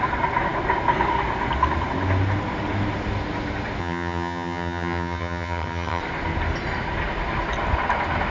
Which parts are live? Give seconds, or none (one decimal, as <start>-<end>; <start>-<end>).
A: 0.0-3.8; 6.0-8.3